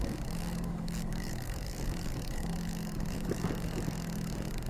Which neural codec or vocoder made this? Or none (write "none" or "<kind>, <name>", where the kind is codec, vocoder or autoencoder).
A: codec, DAC